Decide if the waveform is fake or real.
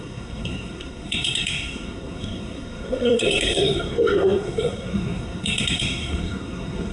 fake